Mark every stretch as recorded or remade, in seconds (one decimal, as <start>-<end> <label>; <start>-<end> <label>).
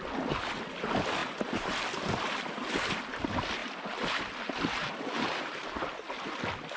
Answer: 0.0-1.2 recorded; 1.2-1.8 remade; 1.8-4.8 recorded; 4.8-5.9 remade; 5.9-6.8 recorded